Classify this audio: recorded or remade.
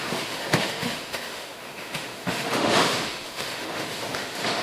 remade